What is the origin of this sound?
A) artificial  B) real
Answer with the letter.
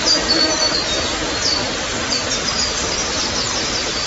B